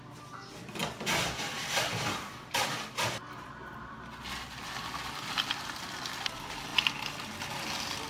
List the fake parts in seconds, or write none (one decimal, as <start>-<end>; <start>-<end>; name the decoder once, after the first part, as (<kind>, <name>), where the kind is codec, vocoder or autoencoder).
0.8-3.3 (vocoder, BigVGAN v2)